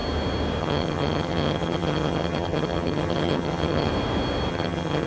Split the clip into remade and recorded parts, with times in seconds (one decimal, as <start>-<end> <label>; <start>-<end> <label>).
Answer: 0.0-0.6 recorded; 0.6-3.9 remade; 3.9-4.5 recorded; 4.5-5.1 remade